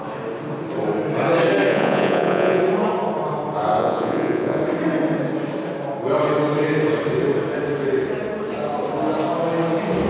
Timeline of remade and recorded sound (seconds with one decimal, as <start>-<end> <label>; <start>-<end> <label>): 0.0-1.7 recorded; 1.7-2.6 remade; 2.6-3.8 recorded; 3.8-4.6 remade; 4.6-10.1 recorded